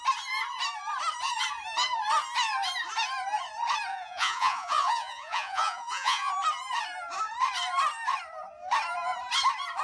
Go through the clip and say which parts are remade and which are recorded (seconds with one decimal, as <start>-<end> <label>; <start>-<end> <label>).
0.0-3.9 recorded; 3.9-6.3 remade; 6.3-9.8 recorded